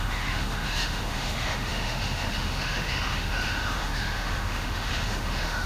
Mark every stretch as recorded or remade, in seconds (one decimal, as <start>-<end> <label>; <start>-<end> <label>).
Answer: 0.0-5.7 remade